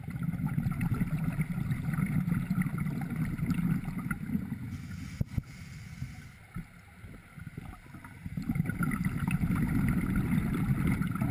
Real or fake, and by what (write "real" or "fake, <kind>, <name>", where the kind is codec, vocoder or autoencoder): real